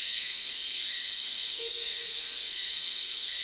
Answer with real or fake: fake